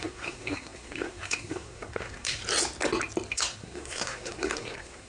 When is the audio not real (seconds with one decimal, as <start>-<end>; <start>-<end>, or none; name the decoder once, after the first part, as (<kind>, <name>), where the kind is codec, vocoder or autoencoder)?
0.0-2.4 (codec, SNAC); 3.3-5.1